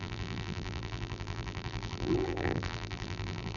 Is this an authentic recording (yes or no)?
no